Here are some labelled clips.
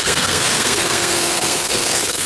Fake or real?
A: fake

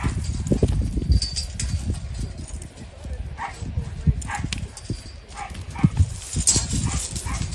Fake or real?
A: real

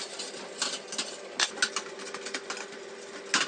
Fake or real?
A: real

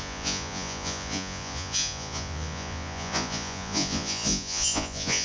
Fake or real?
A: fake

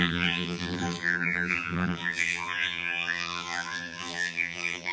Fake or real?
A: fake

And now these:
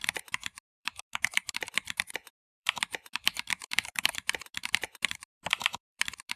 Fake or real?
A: fake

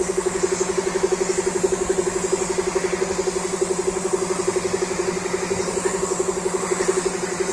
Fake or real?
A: real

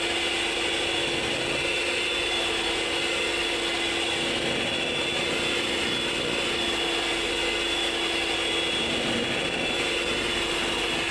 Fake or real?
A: real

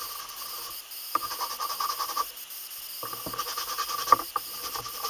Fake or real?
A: real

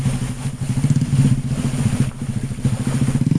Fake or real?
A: real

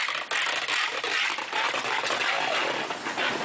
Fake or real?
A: real